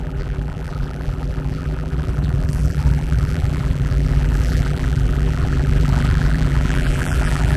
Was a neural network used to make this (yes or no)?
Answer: yes